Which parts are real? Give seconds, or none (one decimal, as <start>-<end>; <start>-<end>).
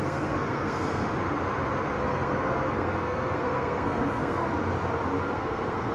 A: 1.0-2.0; 4.4-5.2